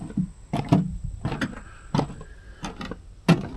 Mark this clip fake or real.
real